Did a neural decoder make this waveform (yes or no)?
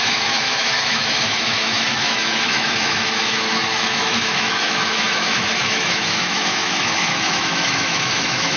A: yes